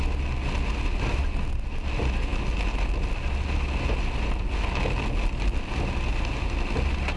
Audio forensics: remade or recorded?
recorded